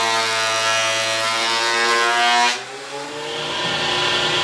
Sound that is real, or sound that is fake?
real